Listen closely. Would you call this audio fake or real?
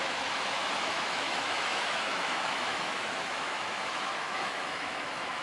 fake